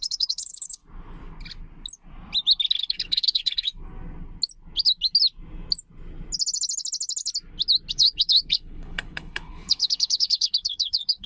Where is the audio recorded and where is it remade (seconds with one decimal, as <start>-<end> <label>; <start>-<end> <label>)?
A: 0.0-0.8 remade; 0.8-2.8 recorded; 2.8-3.7 remade; 3.7-7.9 recorded; 7.9-11.3 remade